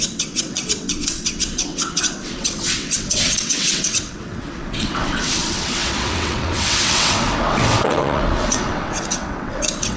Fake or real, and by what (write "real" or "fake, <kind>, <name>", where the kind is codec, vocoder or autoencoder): fake, vocoder, WaveNeXt